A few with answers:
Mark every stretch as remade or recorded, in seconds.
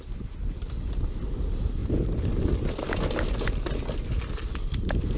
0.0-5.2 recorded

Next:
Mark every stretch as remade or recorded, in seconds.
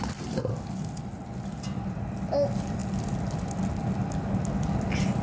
0.0-5.2 recorded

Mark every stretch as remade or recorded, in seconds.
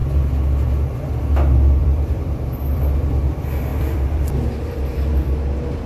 0.0-1.8 recorded; 1.8-3.2 remade; 3.2-3.7 recorded; 3.7-4.3 remade; 4.3-5.9 recorded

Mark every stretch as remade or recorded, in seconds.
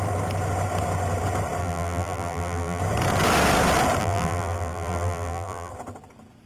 0.0-1.6 recorded; 1.6-2.8 remade; 2.8-4.0 recorded; 4.0-5.7 remade; 5.7-6.5 recorded